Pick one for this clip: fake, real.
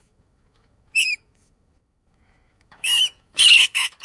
fake